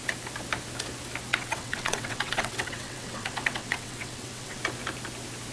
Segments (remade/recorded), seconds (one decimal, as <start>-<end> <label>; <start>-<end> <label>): 0.0-1.3 recorded; 1.3-4.6 remade; 4.6-5.5 recorded